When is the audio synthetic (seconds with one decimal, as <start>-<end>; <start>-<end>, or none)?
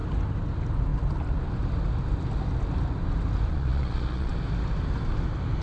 3.5-4.3